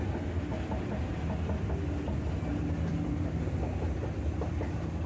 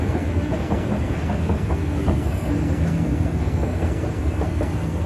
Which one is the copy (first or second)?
second